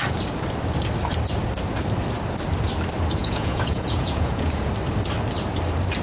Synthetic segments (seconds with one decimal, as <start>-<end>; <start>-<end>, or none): 3.2-4.7